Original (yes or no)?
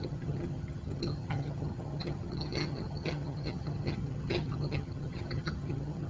no